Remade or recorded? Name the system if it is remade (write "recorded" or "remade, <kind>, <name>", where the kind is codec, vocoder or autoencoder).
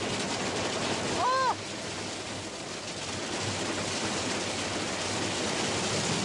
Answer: recorded